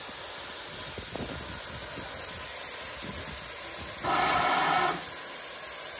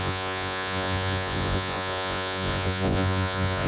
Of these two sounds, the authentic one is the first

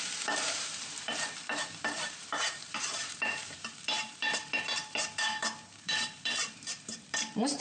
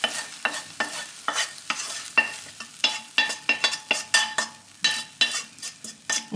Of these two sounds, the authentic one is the second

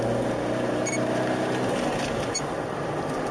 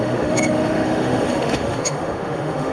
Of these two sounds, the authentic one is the first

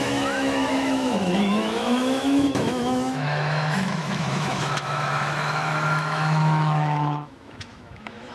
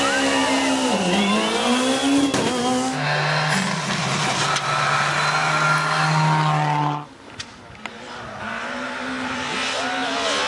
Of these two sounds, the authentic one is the second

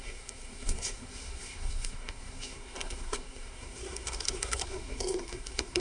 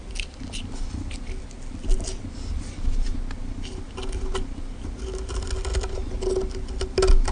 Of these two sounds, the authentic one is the second